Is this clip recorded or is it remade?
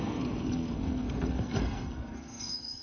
remade